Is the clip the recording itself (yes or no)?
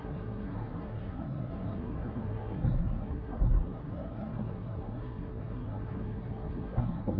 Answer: no